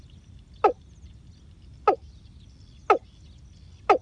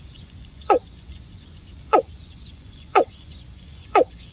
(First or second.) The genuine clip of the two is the first